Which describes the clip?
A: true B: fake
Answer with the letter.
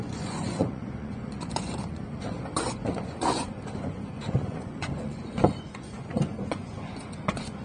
B